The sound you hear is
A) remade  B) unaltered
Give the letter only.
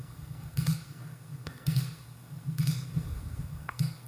A